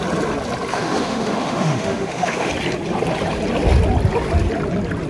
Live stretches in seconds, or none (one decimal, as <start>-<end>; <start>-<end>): 0.0-0.7; 2.5-5.1

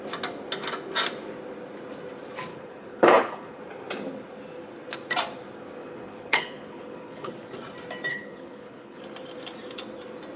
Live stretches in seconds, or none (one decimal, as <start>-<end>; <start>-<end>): 0.0-2.5; 3.6-5.8; 7.3-8.1; 9.0-10.4

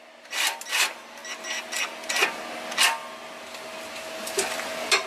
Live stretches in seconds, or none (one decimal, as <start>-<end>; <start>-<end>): 0.0-5.1

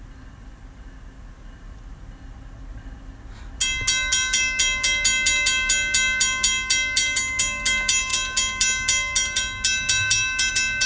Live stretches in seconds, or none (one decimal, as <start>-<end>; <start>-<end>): 0.0-10.9